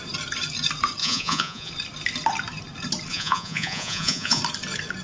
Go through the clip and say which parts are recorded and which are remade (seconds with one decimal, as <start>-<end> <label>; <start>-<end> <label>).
0.0-1.0 recorded; 1.0-1.7 remade; 1.7-3.1 recorded; 3.1-4.4 remade; 4.4-5.0 recorded